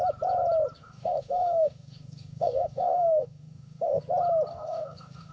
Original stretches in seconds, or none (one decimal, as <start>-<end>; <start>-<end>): 0.0-0.8; 4.0-4.5